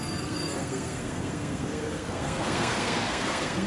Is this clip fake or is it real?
fake